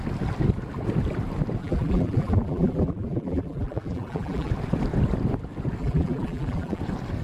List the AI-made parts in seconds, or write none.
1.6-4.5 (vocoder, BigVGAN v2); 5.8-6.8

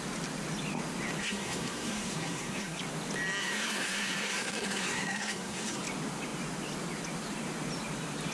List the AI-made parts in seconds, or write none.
1.2-2.8 (codec, SNAC); 3.4-5.8